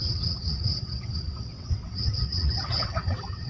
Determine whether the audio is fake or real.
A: fake